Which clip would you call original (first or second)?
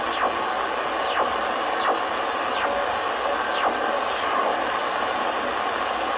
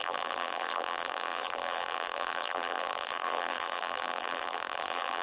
first